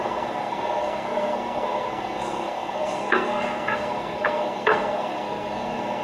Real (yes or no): no